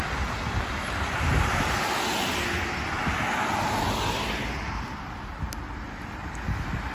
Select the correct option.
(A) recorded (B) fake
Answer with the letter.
A